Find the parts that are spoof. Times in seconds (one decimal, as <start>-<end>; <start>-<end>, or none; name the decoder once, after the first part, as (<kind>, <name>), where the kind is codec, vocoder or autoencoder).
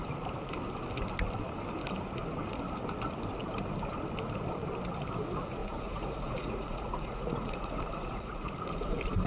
5.6-8.5 (vocoder, Vocos)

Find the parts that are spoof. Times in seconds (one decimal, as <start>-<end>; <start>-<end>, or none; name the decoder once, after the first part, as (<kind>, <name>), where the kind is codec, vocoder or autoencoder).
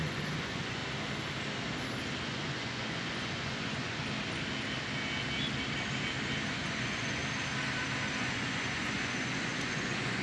0.0-0.8 (vocoder, Vocos); 2.2-4.0; 6.5-7.2; 8.2-10.2